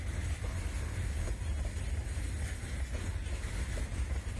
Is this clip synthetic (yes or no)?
no